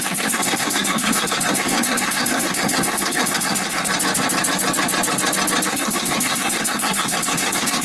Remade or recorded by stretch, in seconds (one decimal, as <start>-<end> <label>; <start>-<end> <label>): 0.0-3.9 remade; 3.9-5.7 recorded; 5.7-7.8 remade